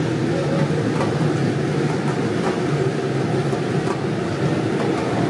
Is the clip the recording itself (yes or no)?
yes